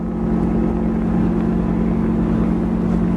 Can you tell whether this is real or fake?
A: real